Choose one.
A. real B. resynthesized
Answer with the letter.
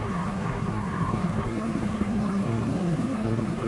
B